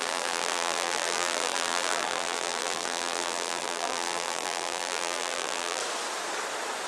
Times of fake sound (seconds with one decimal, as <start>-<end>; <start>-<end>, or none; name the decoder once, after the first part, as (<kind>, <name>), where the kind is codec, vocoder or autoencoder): 0.0-5.8 (vocoder, BigVGAN v2)